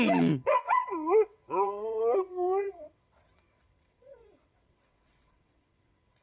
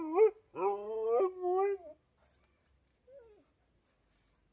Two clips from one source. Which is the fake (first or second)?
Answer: first